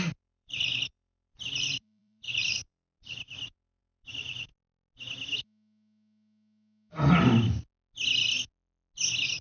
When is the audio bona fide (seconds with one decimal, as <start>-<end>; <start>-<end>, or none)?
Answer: 4.5-9.4